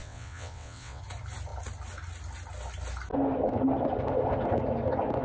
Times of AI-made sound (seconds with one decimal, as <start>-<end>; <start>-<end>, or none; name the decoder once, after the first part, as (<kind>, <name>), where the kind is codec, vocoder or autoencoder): 0.0-1.0 (vocoder, WaveNeXt)